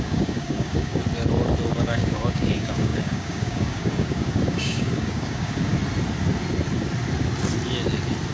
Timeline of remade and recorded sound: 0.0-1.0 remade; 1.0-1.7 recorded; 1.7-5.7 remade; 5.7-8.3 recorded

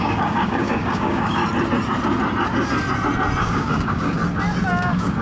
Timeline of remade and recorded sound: 0.0-1.4 remade; 1.4-3.4 recorded; 3.4-4.2 remade; 4.2-4.7 recorded; 4.7-5.2 remade

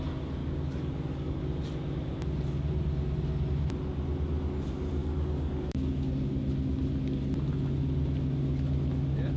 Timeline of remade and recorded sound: 0.0-0.4 recorded; 0.4-1.4 remade; 1.4-5.0 recorded; 5.0-6.1 remade; 6.1-9.4 recorded

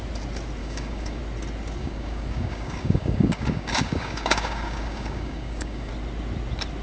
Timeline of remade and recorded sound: 0.0-0.6 recorded; 0.6-1.2 remade; 1.2-1.8 recorded; 1.8-5.9 remade; 5.9-6.8 recorded

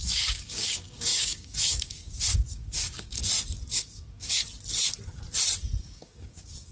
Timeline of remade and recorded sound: 0.0-3.2 remade; 3.2-3.7 recorded; 3.7-4.4 remade; 4.4-5.8 recorded; 5.8-6.7 remade

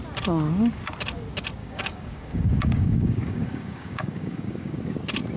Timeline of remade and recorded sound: 0.0-1.6 recorded; 1.6-4.8 remade; 4.8-5.4 recorded